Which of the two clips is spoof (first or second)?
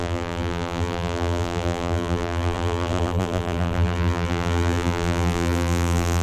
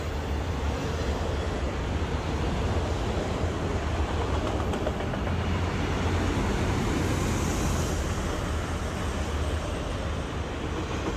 first